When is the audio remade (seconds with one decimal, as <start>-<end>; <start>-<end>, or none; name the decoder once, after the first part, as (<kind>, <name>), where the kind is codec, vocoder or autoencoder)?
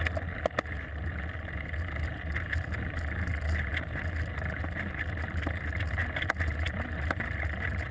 none